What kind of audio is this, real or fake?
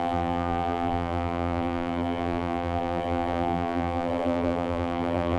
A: fake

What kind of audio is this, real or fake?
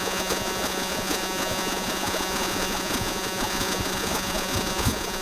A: fake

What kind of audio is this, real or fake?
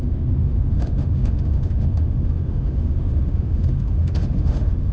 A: fake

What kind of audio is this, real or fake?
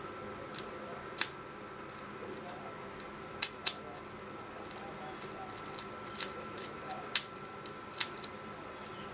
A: real